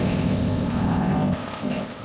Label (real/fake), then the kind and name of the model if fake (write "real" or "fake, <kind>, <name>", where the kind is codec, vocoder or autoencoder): fake, codec, ZipCodec